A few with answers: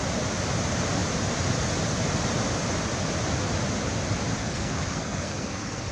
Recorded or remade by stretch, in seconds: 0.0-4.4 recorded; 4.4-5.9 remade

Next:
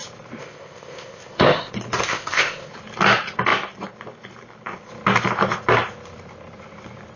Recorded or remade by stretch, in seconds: 0.0-0.4 recorded; 0.4-1.7 remade; 1.7-2.1 recorded; 2.1-2.7 remade; 2.7-7.2 recorded